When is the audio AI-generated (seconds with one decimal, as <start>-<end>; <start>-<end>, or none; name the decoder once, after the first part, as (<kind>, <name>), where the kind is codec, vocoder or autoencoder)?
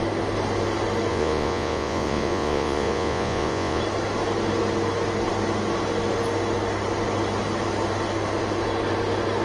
1.1-3.8 (vocoder, Vocos)